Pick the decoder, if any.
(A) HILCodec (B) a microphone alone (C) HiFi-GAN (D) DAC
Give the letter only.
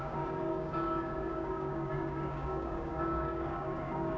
D